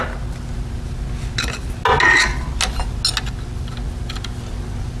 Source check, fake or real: real